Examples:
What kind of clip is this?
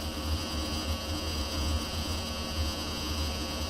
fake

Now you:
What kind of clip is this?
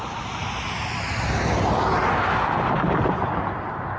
real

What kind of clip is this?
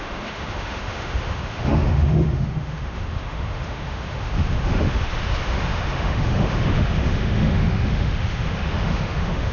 fake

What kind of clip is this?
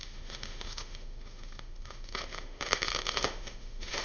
fake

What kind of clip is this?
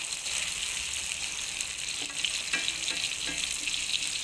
real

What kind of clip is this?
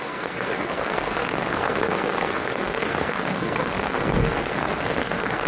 fake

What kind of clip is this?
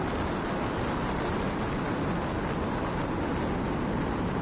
real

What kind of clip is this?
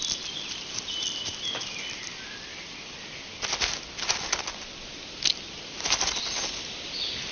real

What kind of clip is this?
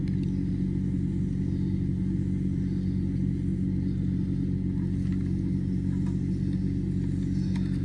real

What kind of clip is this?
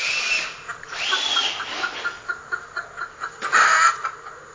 real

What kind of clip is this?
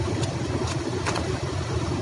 real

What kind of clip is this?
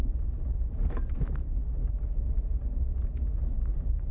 fake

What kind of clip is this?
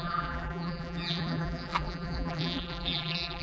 fake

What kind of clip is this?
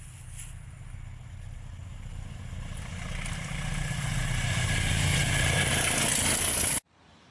real